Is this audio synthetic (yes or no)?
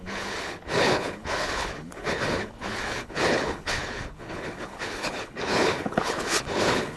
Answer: yes